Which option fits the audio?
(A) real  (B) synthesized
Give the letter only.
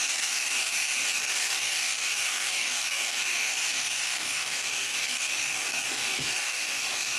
B